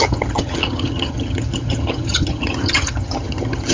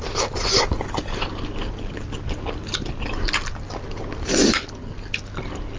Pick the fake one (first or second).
first